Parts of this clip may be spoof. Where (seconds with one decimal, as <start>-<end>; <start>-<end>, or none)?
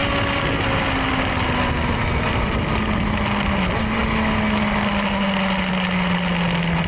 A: none